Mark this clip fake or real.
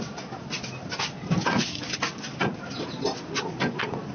real